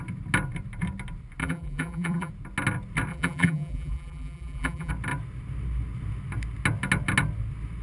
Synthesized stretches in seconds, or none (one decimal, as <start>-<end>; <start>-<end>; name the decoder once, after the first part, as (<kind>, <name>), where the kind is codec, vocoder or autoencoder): 1.4-2.3 (vocoder, BigVGAN v2); 3.1-4.9